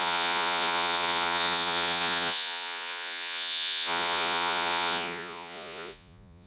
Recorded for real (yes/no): no